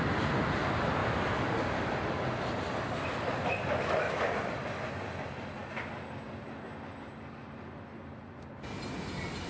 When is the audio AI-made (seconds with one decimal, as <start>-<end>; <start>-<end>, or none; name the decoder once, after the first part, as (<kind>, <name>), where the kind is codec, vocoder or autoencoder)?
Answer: 8.0-9.1 (vocoder, BigVGAN v2)